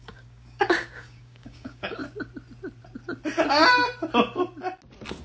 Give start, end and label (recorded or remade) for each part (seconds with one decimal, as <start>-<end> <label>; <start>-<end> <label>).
0.0-2.0 remade; 2.0-5.2 recorded